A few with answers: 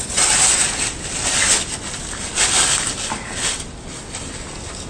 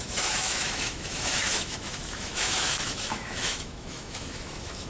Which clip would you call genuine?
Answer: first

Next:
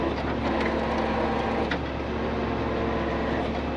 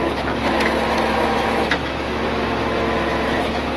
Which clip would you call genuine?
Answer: first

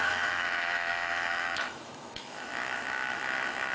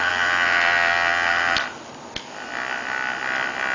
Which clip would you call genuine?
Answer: second